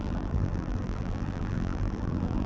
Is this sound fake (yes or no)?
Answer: yes